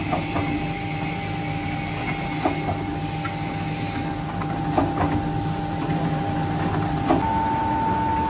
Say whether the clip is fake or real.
real